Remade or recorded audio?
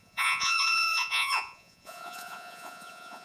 remade